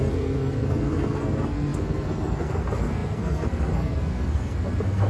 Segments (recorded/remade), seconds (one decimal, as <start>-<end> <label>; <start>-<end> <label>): 0.0-5.1 remade